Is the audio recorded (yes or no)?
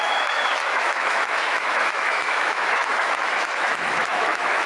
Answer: no